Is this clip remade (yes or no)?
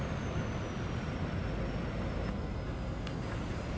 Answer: no